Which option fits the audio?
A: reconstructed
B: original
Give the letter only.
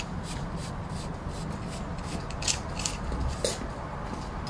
B